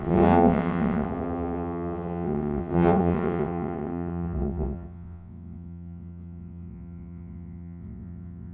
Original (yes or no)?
no